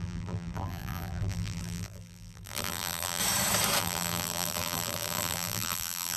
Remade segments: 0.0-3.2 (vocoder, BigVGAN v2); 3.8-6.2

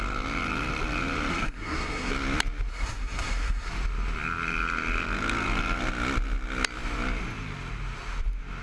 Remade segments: 1.3-2.1 (codec, SNAC); 2.7-3.7